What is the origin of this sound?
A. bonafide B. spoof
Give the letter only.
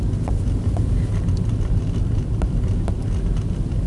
A